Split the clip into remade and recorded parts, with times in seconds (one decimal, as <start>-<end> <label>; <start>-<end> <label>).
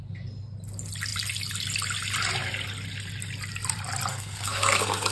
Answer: 0.0-4.1 recorded; 4.1-5.1 remade